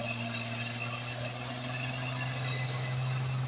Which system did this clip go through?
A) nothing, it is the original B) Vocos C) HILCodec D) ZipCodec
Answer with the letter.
A